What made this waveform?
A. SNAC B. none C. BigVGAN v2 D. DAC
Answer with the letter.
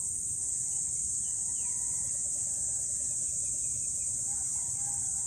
B